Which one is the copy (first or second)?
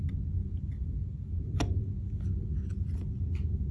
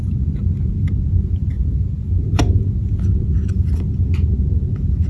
second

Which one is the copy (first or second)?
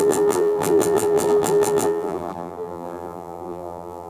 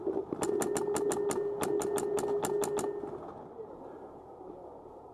first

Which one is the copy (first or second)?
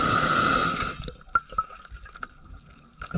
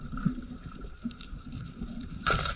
second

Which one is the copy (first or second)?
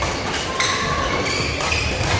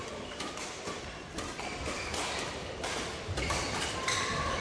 second